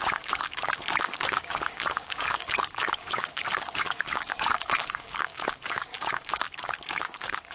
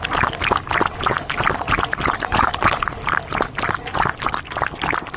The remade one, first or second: first